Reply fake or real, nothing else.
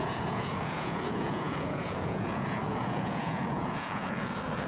fake